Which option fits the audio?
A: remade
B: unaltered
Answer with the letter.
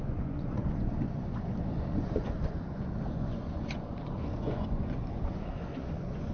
A